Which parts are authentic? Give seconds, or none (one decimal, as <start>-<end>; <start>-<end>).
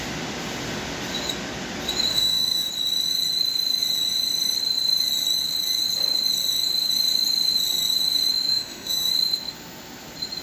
0.0-2.1; 2.7-8.5; 9.1-10.4